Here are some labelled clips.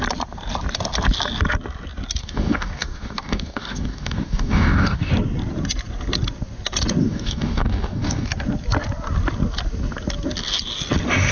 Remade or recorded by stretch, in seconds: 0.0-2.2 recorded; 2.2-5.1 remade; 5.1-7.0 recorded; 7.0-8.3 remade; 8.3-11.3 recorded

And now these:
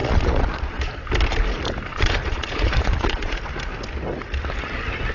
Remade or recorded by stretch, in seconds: 0.0-0.8 remade; 0.8-1.9 recorded; 1.9-3.5 remade; 3.5-5.1 recorded

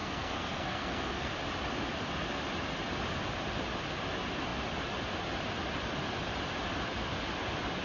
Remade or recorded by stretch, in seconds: 0.0-1.3 remade; 1.3-7.8 recorded

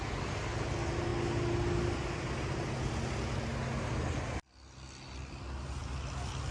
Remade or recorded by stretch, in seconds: 0.0-6.5 recorded

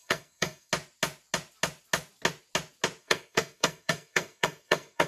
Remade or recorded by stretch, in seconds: 0.0-0.7 remade; 0.7-3.0 recorded; 3.0-5.1 remade

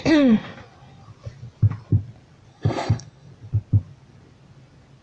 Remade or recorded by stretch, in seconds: 0.0-2.5 recorded; 2.5-3.3 remade; 3.3-5.0 recorded

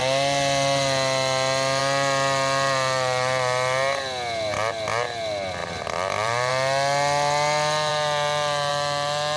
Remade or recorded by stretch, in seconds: 0.0-5.6 recorded; 5.6-6.5 remade; 6.5-9.4 recorded